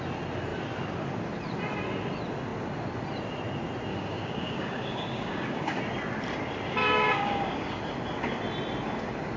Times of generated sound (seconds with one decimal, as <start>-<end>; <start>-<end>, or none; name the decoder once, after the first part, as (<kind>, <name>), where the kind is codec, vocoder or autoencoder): 3.9-5.8 (codec, DAC); 6.8-7.8